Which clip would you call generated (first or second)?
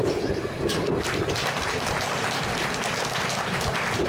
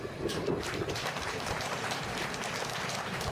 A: second